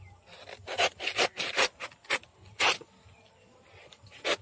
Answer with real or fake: real